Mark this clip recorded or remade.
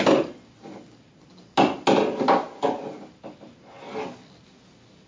recorded